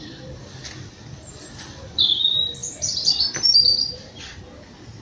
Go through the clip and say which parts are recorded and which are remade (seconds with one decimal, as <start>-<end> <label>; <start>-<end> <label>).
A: 0.0-1.3 recorded; 1.3-2.2 remade; 2.2-2.6 recorded; 2.6-4.4 remade; 4.4-5.0 recorded